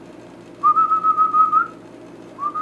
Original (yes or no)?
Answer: yes